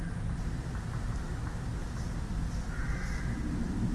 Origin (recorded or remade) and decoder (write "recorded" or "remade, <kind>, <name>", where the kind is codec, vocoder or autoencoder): recorded